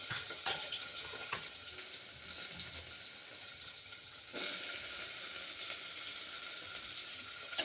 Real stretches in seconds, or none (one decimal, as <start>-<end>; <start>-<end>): 1.7-3.4; 4.3-7.1